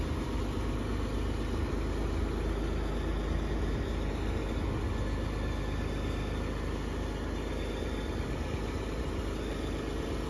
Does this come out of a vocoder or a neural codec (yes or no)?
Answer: no